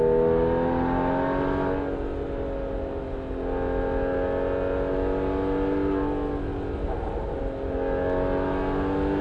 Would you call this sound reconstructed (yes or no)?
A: no